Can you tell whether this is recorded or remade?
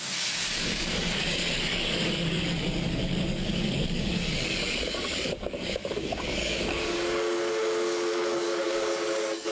remade